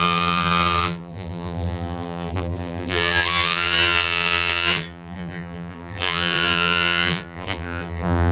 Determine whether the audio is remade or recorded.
remade